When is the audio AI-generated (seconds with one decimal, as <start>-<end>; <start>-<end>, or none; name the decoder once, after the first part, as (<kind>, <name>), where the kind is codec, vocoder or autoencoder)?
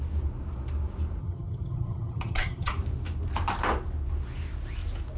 1.2-2.7 (vocoder, HiFi-GAN)